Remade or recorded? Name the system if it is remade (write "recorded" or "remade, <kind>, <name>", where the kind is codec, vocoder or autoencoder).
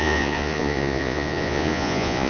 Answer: remade, vocoder, Vocos